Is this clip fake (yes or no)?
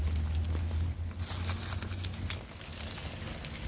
no